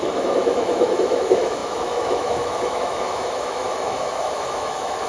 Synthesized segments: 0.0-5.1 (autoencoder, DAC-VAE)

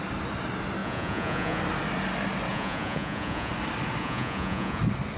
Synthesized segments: 0.8-1.6 (vocoder, Vocos); 2.5-3.5; 4.0-4.8

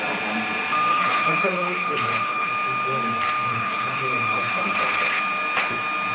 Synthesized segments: 0.9-2.5 (codec, HILCodec); 3.5-5.2

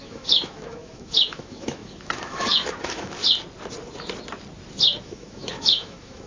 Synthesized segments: 0.0-3.2 (autoencoder, DAC-VAE); 5.0-6.3

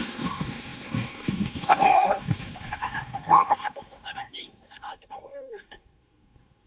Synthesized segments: 0.0-6.7 (codec, SNAC)

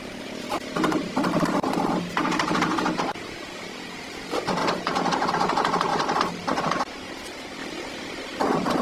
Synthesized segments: 0.0-1.0 (vocoder, Vocos); 2.2-5.9; 6.6-7.6; 8.4-8.8